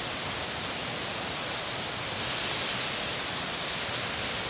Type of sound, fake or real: real